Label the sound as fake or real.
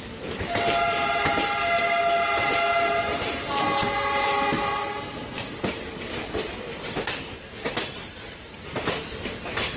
real